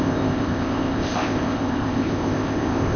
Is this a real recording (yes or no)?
no